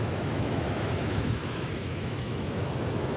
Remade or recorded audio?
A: remade